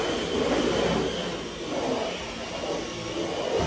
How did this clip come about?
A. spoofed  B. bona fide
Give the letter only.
B